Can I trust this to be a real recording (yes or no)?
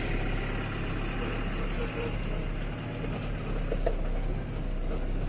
yes